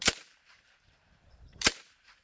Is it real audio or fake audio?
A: fake